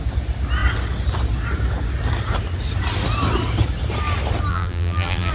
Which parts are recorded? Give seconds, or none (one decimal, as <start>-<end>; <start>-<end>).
0.0-4.5